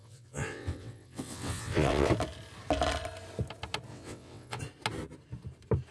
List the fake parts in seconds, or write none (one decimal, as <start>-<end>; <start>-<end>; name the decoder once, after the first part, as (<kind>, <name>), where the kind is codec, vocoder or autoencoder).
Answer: 0.0-2.1 (vocoder, WaveNeXt); 3.9-4.6